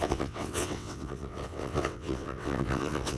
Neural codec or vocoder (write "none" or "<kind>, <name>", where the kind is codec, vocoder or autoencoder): vocoder, WaveNeXt